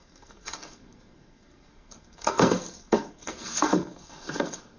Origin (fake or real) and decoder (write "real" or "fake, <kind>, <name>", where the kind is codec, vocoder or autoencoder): fake, codec, SNAC